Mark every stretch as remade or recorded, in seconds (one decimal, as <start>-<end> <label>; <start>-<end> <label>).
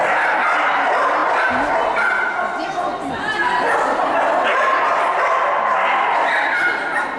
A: 0.0-7.2 recorded